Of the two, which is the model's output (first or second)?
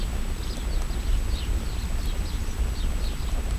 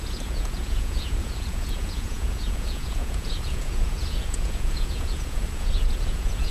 second